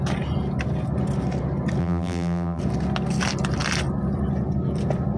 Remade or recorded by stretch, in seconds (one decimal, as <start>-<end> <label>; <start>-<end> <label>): 0.0-1.8 recorded; 1.8-2.6 remade; 2.6-5.2 recorded